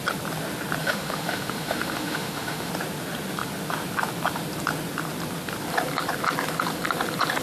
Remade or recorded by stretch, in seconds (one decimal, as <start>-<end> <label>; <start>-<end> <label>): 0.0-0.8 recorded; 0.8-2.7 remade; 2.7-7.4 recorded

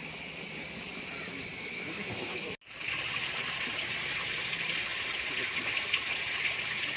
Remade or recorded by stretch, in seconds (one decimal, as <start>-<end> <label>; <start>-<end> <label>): 0.0-1.5 recorded; 1.5-2.4 remade; 2.4-7.0 recorded

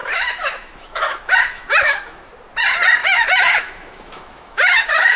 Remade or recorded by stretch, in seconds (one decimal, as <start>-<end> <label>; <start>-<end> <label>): 0.0-2.3 remade; 2.3-3.0 recorded; 3.0-5.2 remade

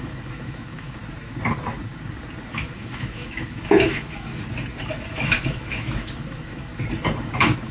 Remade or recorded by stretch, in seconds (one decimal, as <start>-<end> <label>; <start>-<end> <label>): 0.0-1.0 remade; 1.0-2.5 recorded; 2.5-4.3 remade; 4.3-5.1 recorded; 5.1-6.7 remade; 6.7-7.2 recorded; 7.2-7.7 remade

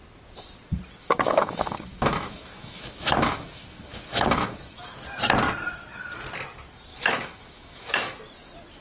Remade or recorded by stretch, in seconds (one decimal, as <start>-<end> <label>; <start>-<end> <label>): 0.0-1.0 recorded; 1.0-4.8 remade; 4.8-6.9 recorded; 6.9-8.2 remade; 8.2-8.8 recorded